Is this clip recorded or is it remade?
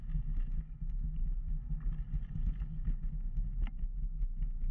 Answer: recorded